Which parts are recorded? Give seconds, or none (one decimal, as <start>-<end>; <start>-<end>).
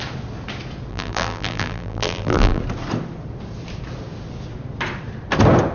0.0-0.9; 2.6-5.7